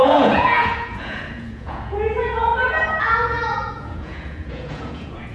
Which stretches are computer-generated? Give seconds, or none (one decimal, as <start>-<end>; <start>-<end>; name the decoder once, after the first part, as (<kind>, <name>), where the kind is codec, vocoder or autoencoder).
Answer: 0.0-2.5 (vocoder, Vocos); 3.0-5.3